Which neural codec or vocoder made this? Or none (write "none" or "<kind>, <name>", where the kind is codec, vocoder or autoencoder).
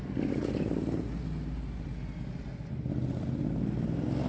none